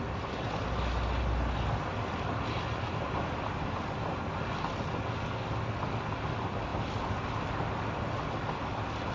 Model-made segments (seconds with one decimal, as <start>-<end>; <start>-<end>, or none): none